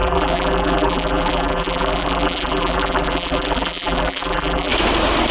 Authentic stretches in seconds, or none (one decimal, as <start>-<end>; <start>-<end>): 4.7-5.3